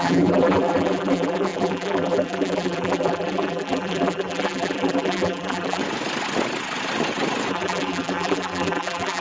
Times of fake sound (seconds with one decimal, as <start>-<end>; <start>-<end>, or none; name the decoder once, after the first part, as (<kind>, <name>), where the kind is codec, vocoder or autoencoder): 0.0-5.8 (vocoder, BigVGAN v2); 7.5-9.2